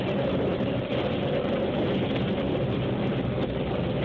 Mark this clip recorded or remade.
recorded